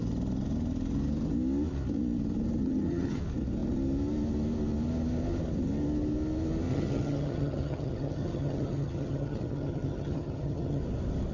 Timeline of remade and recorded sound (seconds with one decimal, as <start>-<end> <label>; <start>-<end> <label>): 0.0-2.6 recorded; 2.6-3.2 remade; 3.2-6.7 recorded; 6.7-10.8 remade; 10.8-11.3 recorded